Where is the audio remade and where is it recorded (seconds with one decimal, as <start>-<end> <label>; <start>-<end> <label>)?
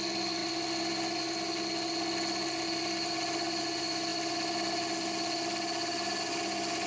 0.0-6.9 recorded